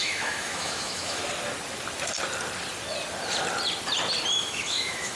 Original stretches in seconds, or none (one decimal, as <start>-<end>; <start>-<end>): 1.2-4.3